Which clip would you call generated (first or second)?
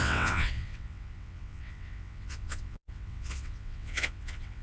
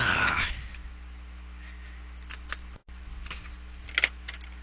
first